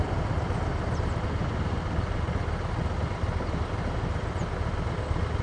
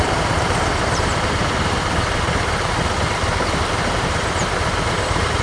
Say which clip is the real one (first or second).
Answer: first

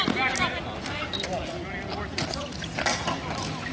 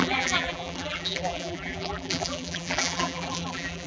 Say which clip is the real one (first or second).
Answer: first